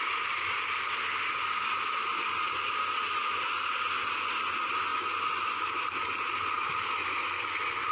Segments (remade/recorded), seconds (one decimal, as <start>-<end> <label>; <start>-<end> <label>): 0.0-7.9 recorded